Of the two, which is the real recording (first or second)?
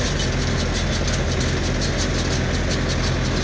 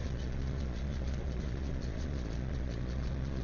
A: first